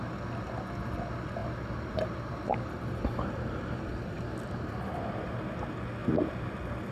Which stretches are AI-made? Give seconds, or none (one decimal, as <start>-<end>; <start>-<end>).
1.4-5.4; 6.0-6.5